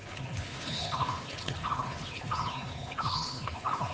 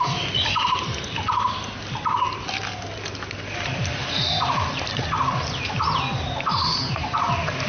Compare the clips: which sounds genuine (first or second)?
second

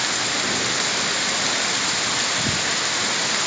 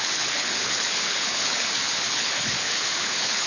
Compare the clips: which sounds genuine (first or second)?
first